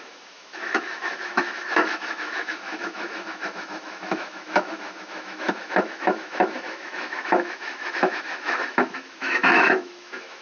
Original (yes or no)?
no